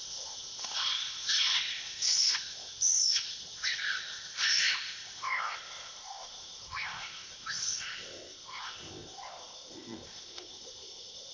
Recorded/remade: remade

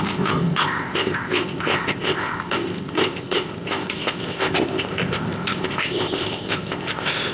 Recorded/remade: remade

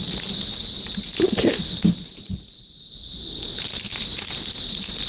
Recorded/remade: recorded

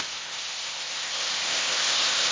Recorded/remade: remade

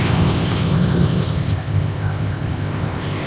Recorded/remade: remade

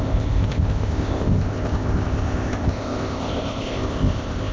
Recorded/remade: remade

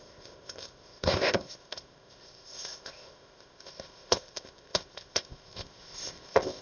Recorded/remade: remade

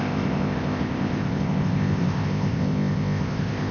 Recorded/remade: remade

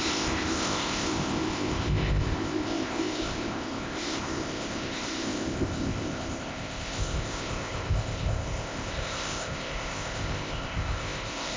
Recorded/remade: remade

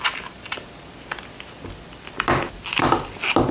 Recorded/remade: recorded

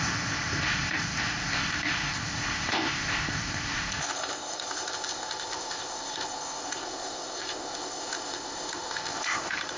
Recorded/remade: remade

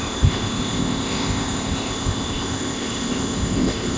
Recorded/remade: remade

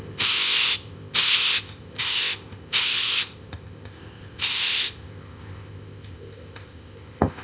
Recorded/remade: remade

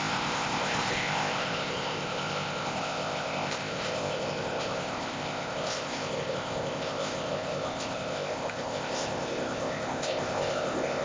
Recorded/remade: remade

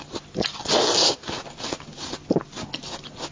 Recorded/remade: recorded